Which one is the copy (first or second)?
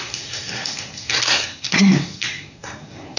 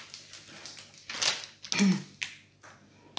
first